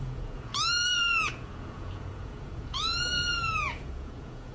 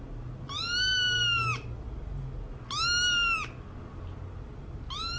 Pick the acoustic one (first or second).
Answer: second